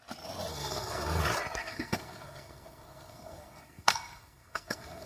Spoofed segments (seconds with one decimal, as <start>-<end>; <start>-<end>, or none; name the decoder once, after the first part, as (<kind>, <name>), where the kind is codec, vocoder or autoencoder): 0.5-1.2 (codec, SNAC); 1.6-5.1